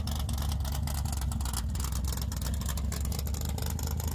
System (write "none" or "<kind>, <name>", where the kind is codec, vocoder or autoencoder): none